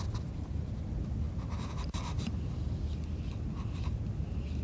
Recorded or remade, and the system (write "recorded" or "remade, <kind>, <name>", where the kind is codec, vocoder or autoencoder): recorded